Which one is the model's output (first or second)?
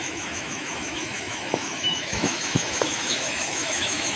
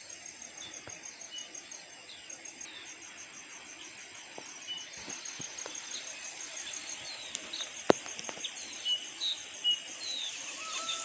first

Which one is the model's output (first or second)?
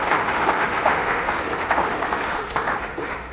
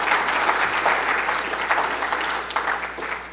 first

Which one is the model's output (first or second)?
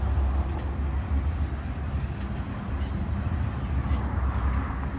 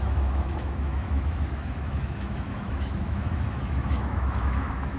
second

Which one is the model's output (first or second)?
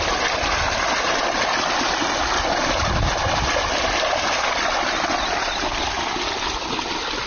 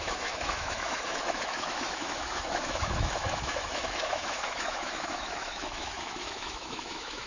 second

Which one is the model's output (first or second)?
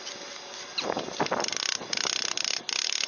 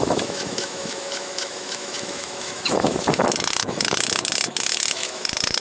second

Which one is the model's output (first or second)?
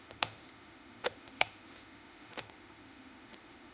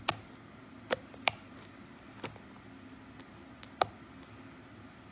first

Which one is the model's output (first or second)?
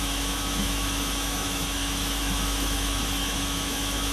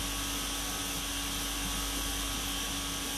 first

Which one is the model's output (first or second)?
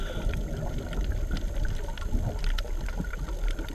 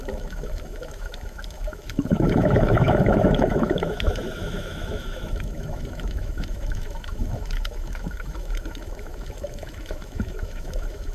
second